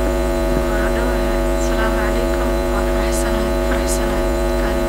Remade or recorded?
remade